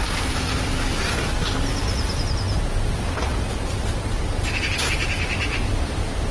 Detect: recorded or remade recorded